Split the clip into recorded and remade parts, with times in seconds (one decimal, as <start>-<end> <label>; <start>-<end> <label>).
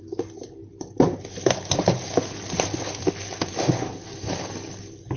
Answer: 0.0-5.2 recorded